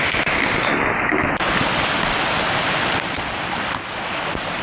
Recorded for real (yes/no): yes